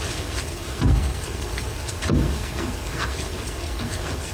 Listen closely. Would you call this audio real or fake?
fake